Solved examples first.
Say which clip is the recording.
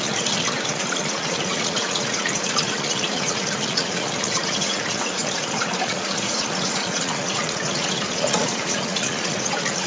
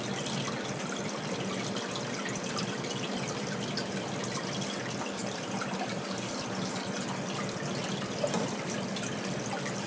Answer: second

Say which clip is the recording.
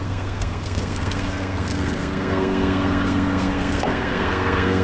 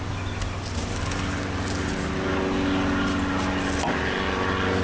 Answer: second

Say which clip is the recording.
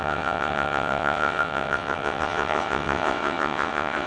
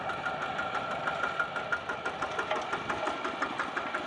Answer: second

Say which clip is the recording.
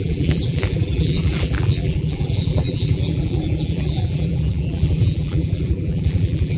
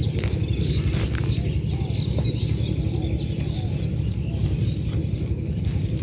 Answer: second